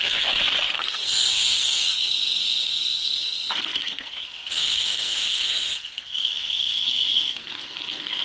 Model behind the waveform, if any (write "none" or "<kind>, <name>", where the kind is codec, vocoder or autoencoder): codec, SNAC